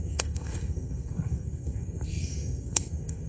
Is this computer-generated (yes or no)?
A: yes